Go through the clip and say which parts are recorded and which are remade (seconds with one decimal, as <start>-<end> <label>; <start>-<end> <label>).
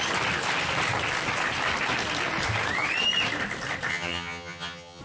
0.0-3.9 recorded; 3.9-5.0 remade